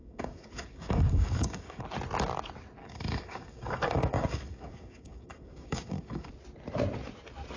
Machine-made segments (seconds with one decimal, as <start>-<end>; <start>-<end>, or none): 0.0-1.8; 2.8-6.3